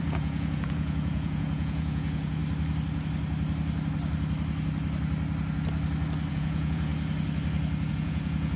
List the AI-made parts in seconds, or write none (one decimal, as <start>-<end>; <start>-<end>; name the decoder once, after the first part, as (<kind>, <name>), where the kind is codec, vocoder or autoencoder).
0.0-2.4 (vocoder, Vocos); 6.3-6.9; 7.9-8.6